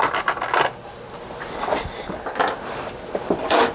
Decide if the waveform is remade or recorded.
recorded